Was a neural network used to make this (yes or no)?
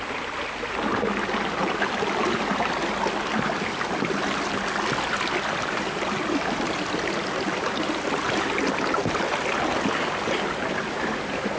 no